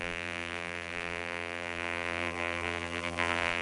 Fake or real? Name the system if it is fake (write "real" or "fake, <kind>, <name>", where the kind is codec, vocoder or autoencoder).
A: fake, vocoder, BigVGAN v2